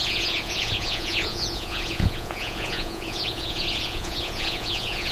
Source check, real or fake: fake